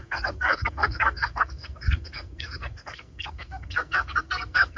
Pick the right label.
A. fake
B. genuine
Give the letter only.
A